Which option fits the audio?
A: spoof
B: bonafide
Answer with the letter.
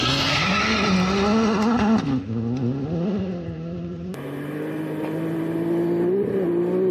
B